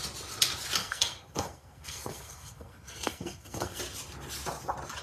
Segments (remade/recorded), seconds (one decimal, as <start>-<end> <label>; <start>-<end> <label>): 0.0-0.8 recorded; 0.8-3.8 remade; 3.8-5.0 recorded

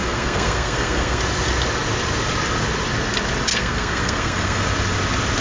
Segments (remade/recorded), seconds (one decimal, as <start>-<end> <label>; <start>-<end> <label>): 0.0-1.2 remade; 1.2-3.5 recorded; 3.5-4.6 remade; 4.6-5.4 recorded

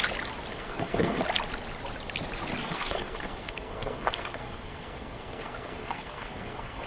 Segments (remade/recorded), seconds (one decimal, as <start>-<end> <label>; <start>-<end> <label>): 0.0-0.5 recorded; 0.5-1.2 remade; 1.2-2.6 recorded; 2.6-6.9 remade